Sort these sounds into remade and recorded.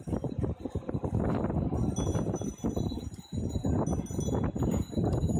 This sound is recorded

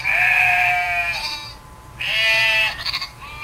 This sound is remade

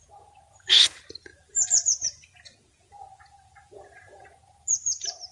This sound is remade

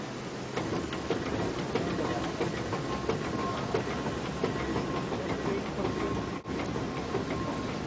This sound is recorded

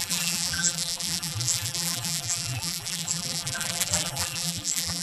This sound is remade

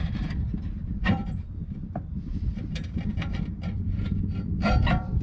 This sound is remade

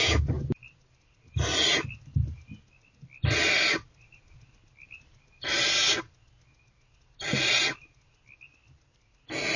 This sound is recorded